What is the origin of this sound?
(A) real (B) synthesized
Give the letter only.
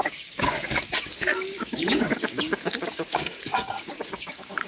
B